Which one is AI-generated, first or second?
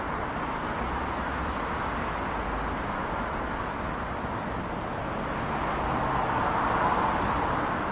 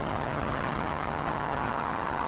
second